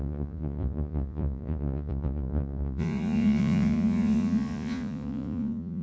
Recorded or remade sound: remade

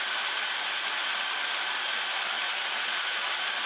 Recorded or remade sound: recorded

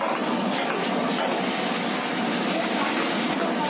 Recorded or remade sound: recorded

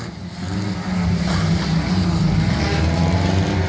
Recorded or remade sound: recorded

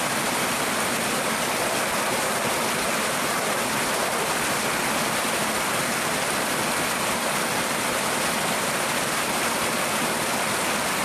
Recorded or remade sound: recorded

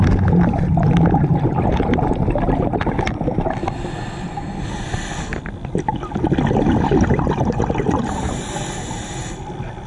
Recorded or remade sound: recorded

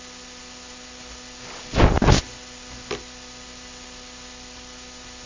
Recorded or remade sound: recorded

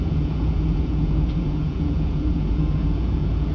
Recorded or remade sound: remade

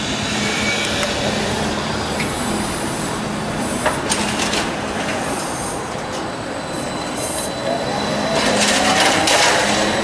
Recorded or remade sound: recorded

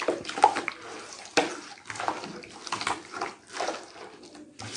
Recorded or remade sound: recorded